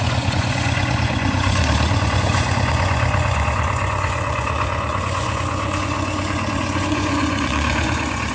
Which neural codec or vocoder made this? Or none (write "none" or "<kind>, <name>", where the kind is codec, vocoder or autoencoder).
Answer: vocoder, Vocos